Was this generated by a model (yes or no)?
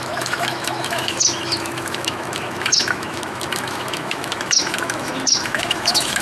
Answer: yes